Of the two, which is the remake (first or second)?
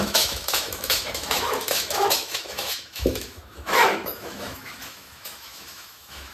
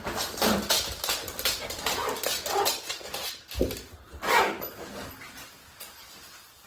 first